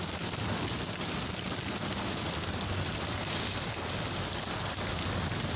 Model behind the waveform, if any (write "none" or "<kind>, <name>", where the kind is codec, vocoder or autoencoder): none